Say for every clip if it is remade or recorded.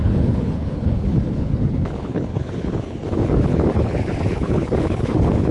remade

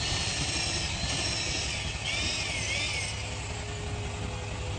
recorded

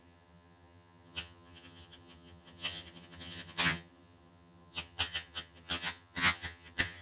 remade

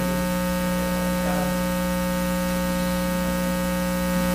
recorded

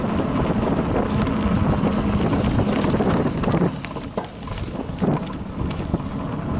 recorded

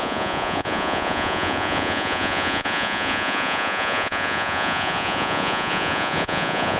remade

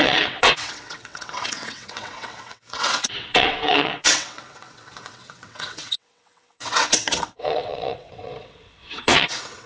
remade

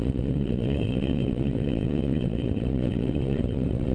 remade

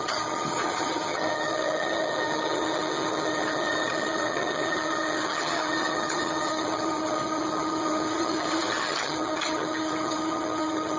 remade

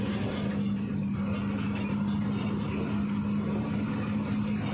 recorded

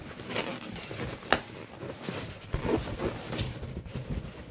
recorded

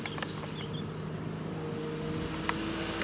recorded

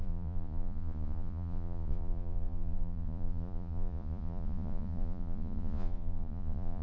remade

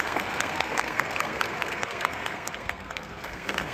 remade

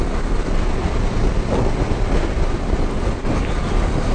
recorded